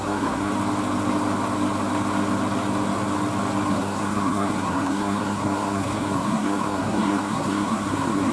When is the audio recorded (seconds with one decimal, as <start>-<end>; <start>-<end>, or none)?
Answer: 0.5-3.7